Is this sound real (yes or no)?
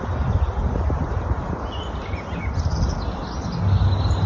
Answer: yes